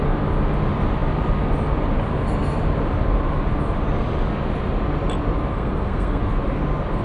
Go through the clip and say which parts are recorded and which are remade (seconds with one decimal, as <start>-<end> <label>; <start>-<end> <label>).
0.0-5.5 recorded; 5.5-6.2 remade; 6.2-7.0 recorded